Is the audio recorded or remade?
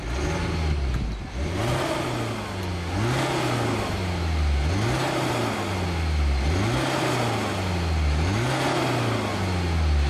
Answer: recorded